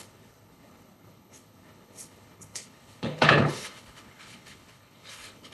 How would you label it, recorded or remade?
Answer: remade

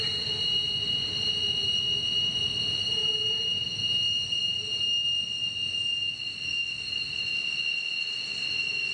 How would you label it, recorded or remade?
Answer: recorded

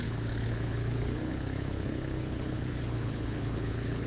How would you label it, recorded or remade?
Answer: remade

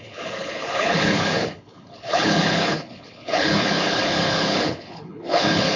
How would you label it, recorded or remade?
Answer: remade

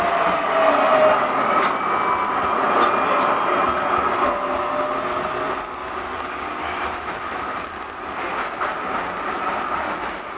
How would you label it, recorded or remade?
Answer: recorded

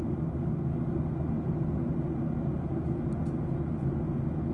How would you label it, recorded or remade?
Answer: recorded